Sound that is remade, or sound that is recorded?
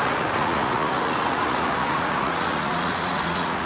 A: remade